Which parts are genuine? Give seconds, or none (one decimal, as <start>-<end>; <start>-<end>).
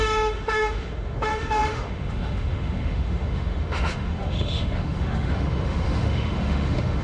none